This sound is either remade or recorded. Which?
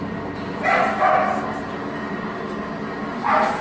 recorded